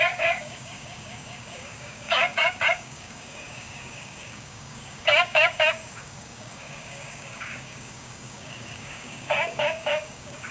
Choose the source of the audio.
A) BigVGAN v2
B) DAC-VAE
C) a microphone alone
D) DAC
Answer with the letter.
D